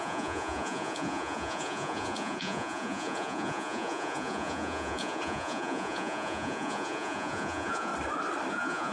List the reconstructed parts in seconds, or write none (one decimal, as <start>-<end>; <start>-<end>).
0.0-7.9; 8.5-8.9

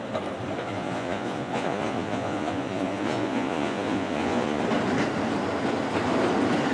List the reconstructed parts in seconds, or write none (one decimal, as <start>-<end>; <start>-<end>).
0.6-4.6

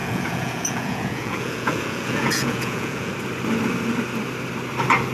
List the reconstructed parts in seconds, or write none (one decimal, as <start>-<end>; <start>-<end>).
0.0-3.1

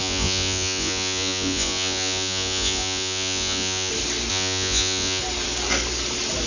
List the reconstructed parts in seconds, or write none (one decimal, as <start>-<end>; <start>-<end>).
0.0-3.9; 4.3-5.2

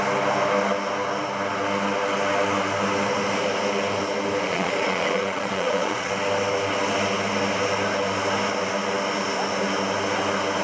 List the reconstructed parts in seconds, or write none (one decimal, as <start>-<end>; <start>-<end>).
4.5-6.1

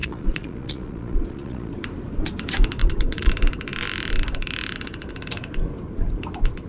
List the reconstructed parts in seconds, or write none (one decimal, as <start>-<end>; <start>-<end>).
0.0-1.7; 2.8-3.3

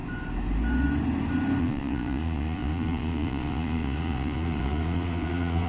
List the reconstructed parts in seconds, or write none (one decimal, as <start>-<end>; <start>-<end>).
1.6-5.7